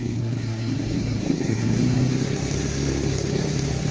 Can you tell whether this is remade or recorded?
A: remade